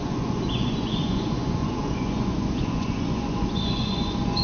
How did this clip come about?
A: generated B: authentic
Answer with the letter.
A